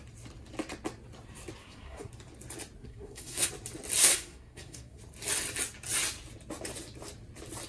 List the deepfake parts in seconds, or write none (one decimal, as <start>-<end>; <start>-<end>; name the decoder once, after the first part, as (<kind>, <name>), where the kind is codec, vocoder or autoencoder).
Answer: 1.6-2.1 (codec, SNAC); 2.8-3.5; 4.0-5.0